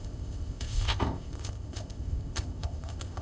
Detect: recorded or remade remade